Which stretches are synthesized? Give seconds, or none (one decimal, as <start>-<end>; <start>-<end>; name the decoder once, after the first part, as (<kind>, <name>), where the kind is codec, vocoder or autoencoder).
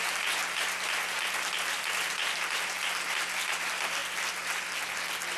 none